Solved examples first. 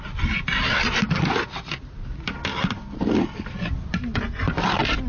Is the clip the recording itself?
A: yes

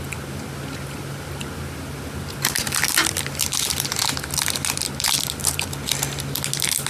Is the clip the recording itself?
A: yes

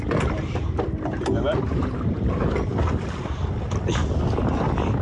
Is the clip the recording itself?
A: yes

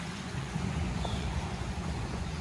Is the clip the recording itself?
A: no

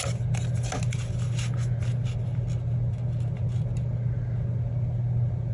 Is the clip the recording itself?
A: yes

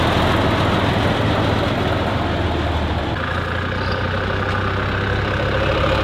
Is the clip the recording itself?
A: yes